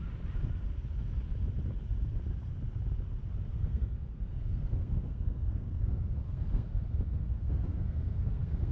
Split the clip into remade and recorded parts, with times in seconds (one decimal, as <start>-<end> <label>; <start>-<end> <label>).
0.0-3.5 recorded; 3.5-8.7 remade